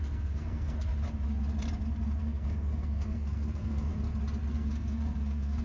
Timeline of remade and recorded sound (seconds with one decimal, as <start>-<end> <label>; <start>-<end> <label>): 0.0-0.9 remade; 0.9-2.2 recorded; 2.2-3.9 remade; 3.9-4.5 recorded; 4.5-5.6 remade